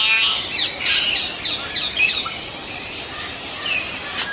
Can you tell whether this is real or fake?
real